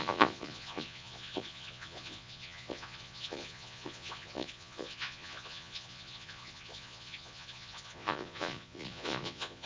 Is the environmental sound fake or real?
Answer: fake